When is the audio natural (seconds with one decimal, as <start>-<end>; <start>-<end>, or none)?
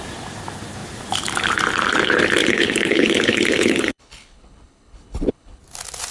0.0-2.4; 5.6-6.1